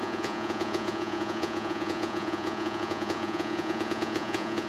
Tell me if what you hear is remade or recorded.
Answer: remade